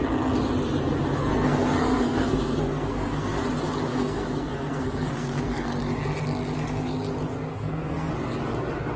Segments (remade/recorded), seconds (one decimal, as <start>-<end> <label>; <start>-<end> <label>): 0.0-1.2 recorded; 1.2-3.4 remade; 3.4-3.9 recorded; 3.9-5.8 remade; 5.8-7.5 recorded; 7.5-8.1 remade; 8.1-9.0 recorded